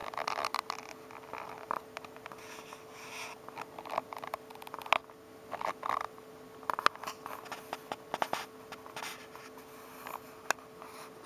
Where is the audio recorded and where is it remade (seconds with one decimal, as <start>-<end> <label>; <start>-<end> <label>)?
0.0-11.3 recorded